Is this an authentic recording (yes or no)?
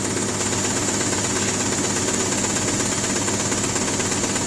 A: yes